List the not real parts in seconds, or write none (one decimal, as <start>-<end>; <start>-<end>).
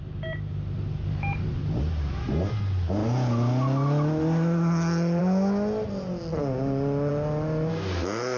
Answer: none